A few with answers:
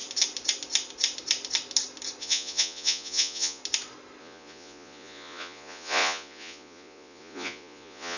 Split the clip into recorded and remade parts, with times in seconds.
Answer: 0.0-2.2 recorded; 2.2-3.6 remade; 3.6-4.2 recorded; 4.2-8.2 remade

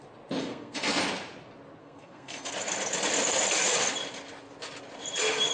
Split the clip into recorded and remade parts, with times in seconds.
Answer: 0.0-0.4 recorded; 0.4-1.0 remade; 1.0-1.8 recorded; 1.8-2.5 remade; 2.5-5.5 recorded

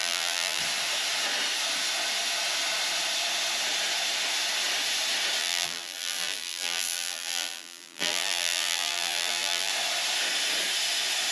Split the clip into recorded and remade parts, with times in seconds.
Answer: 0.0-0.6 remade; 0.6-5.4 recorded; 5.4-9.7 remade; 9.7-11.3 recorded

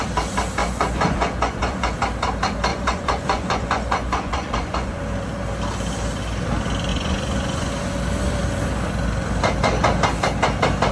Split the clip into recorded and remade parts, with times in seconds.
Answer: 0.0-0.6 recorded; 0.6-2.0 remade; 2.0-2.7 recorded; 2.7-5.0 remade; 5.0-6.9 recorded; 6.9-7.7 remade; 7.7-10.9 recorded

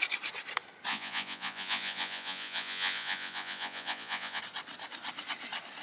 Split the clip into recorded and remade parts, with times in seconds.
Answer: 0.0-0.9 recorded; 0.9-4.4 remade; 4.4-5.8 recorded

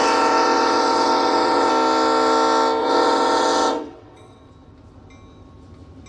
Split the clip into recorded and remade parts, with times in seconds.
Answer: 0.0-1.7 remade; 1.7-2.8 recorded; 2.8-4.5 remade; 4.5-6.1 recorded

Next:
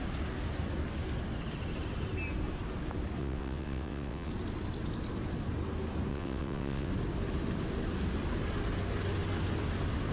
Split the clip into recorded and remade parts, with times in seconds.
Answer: 0.0-3.2 recorded; 3.2-4.3 remade; 4.3-6.1 recorded; 6.1-6.9 remade; 6.9-10.1 recorded

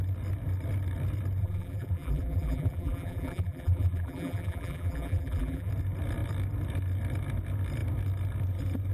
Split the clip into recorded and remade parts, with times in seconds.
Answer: 0.0-1.4 recorded; 1.4-5.7 remade; 5.7-8.9 recorded